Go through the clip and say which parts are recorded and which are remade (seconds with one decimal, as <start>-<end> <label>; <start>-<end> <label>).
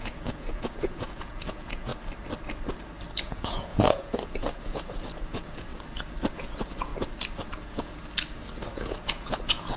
0.0-1.9 remade; 1.9-3.2 recorded; 3.2-5.7 remade; 5.7-6.3 recorded; 6.3-6.9 remade; 6.9-7.5 recorded; 7.5-8.0 remade; 8.0-8.7 recorded; 8.7-9.8 remade